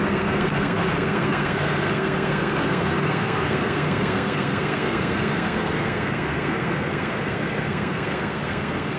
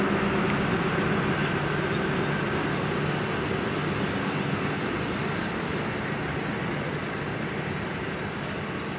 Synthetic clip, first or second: first